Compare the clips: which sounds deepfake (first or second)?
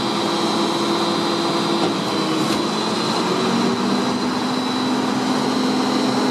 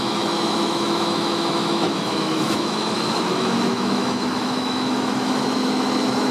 second